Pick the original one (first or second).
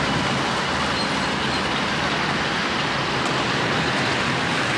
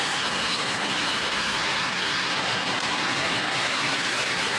first